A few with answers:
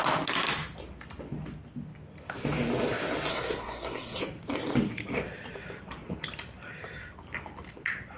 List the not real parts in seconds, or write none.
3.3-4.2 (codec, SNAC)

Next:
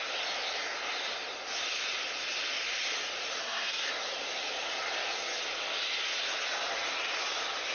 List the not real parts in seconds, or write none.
3.4-3.9 (codec, SNAC)

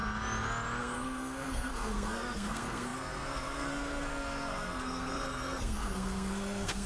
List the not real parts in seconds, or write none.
0.8-6.9 (codec, SNAC)

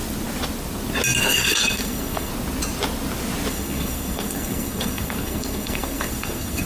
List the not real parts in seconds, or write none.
1.2-2.3 (codec, SNAC); 3.5-6.7

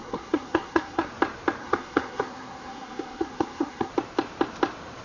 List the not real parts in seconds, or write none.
0.0-1.1 (codec, SNAC); 1.6-3.9

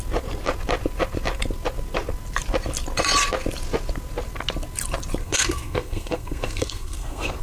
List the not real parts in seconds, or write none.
5.2-7.4 (codec, SNAC)

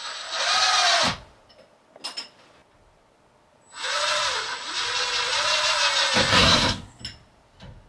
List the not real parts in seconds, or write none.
6.3-7.0 (codec, SNAC)